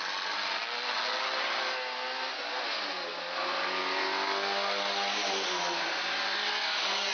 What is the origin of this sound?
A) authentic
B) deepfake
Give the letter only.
A